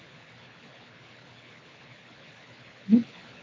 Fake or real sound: fake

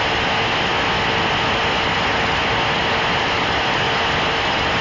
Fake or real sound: real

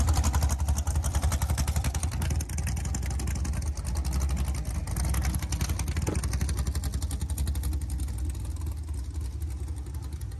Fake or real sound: real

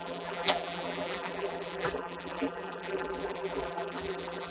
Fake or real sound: fake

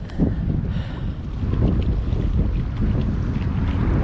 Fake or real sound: real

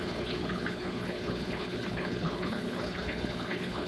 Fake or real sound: fake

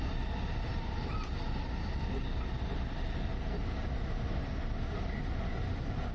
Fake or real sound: real